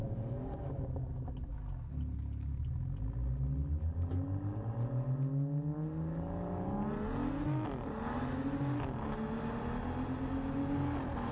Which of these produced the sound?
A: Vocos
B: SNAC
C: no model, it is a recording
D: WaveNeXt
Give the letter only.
C